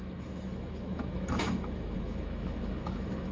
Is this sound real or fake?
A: fake